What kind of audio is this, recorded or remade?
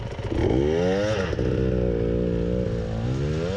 recorded